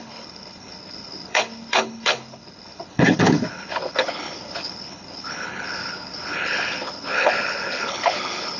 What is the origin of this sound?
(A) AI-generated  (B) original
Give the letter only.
A